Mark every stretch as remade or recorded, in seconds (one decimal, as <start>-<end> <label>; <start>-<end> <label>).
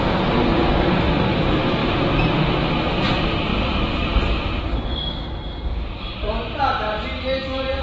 0.0-0.5 recorded; 0.5-1.0 remade; 1.0-1.8 recorded; 1.8-2.4 remade; 2.4-7.8 recorded